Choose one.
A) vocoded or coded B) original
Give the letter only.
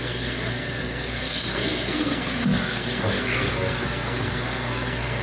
A